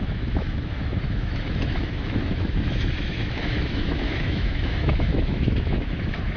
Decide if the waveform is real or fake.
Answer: fake